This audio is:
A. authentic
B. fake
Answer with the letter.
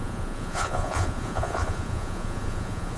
B